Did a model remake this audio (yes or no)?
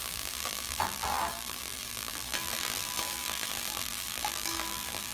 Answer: yes